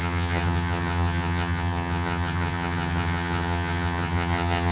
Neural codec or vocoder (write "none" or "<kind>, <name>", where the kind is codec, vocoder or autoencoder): vocoder, HiFi-GAN